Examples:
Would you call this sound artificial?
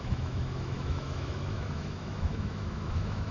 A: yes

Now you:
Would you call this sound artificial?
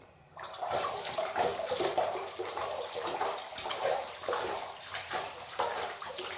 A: yes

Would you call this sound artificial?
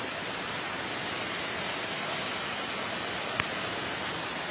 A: no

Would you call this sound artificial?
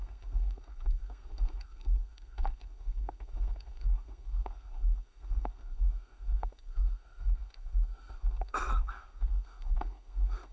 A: yes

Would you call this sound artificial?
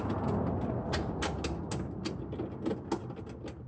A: no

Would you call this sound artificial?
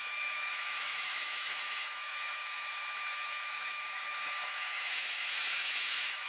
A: yes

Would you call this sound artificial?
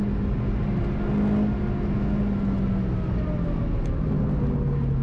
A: no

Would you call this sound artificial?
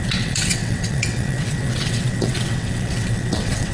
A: yes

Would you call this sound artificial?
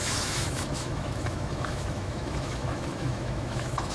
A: yes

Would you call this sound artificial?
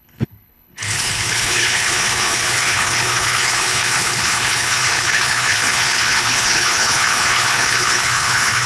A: yes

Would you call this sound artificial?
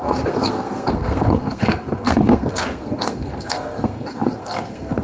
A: yes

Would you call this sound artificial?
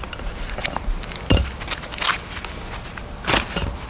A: no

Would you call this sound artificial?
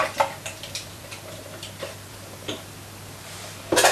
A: yes